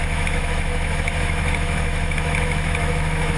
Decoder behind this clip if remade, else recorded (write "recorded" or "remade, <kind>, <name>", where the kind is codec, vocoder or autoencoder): remade, autoencoder, DAC-VAE